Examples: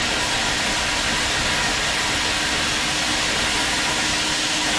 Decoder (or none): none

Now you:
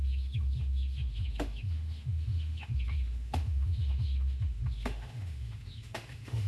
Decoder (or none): autoencoder, DAC-VAE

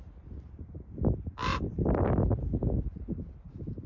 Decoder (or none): none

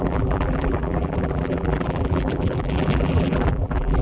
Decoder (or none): vocoder, BigVGAN v2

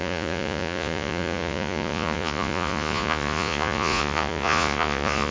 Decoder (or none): vocoder, Vocos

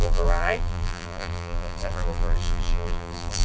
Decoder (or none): vocoder, BigVGAN v2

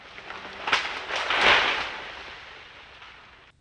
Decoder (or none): none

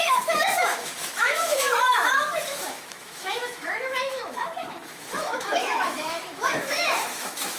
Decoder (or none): autoencoder, DAC-VAE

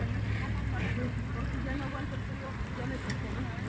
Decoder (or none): none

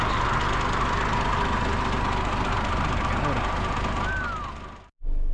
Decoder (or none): none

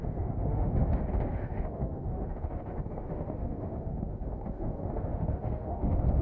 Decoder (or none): autoencoder, DAC-VAE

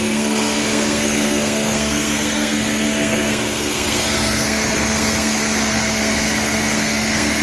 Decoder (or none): codec, SNAC